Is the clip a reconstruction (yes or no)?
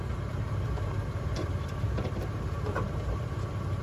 yes